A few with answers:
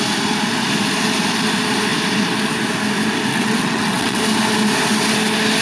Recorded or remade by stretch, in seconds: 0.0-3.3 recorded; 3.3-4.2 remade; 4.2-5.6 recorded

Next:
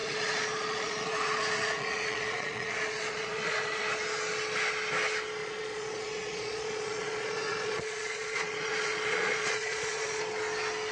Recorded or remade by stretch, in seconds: 0.0-3.8 remade; 3.8-5.4 recorded; 5.4-10.2 remade; 10.2-10.9 recorded

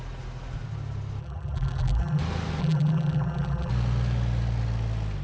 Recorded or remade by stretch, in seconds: 0.0-1.2 recorded; 1.2-2.2 remade; 2.2-2.6 recorded; 2.6-3.7 remade; 3.7-5.2 recorded

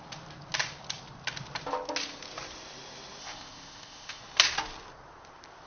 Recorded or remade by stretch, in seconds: 0.0-3.2 recorded; 3.2-4.2 remade; 4.2-5.7 recorded

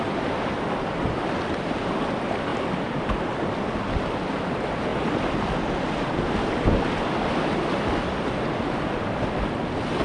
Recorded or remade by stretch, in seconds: 0.0-10.0 recorded

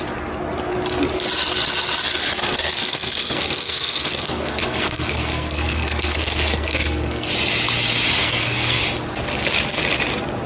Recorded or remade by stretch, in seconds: 0.0-2.4 recorded; 2.4-7.3 remade; 7.3-8.2 recorded; 8.2-8.8 remade; 8.8-10.5 recorded